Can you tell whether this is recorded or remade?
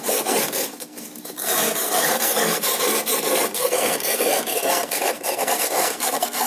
remade